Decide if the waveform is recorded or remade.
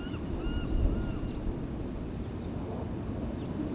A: recorded